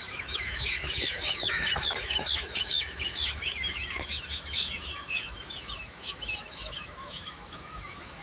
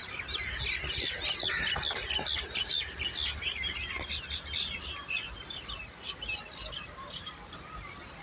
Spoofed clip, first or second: first